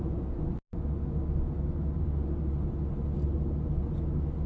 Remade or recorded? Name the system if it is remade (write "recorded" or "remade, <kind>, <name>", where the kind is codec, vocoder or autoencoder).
recorded